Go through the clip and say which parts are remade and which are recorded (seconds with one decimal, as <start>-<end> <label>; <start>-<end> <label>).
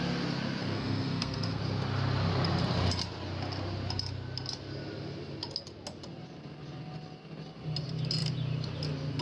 0.0-0.6 recorded; 0.6-1.6 remade; 1.6-9.2 recorded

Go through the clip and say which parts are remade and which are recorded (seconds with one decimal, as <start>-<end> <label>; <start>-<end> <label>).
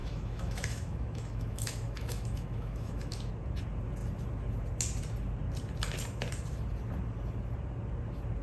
0.0-3.3 remade; 3.3-8.4 recorded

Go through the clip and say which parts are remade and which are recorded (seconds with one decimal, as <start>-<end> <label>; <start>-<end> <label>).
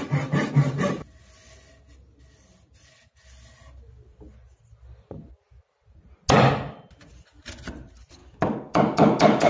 0.0-8.2 recorded; 8.2-9.5 remade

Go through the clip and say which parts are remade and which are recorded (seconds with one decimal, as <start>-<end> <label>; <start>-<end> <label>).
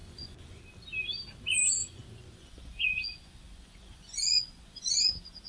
0.0-0.6 remade; 0.6-1.8 recorded; 1.8-5.1 remade; 5.1-5.5 recorded